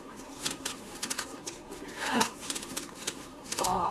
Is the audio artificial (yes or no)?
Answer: yes